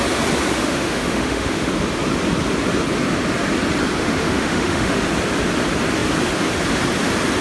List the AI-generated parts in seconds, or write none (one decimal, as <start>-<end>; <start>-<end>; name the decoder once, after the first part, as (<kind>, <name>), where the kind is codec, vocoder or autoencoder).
0.5-1.7 (autoencoder, DAC-VAE); 4.0-5.0